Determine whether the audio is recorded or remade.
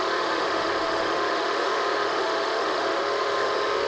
remade